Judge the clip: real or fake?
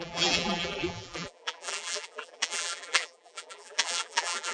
fake